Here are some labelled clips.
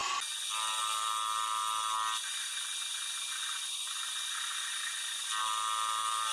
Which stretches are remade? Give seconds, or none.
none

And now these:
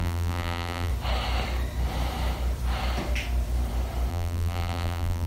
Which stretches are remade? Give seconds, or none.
0.0-0.9 (vocoder, BigVGAN v2); 4.1-5.3

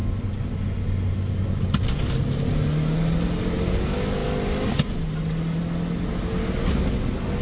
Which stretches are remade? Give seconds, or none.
none

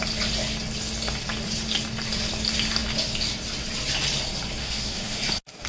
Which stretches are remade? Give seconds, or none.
4.6-5.2 (autoencoder, DAC-VAE)